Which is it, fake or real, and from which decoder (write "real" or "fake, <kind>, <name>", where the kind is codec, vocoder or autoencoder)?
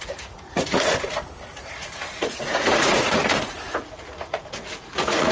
fake, vocoder, Vocos